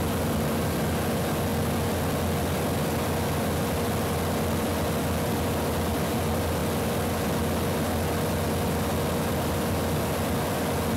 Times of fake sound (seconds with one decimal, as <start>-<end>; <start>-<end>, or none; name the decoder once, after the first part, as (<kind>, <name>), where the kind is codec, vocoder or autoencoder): none